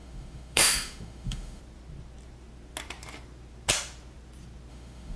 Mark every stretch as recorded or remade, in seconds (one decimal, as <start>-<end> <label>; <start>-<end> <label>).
0.0-1.6 remade; 1.6-4.7 recorded; 4.7-5.2 remade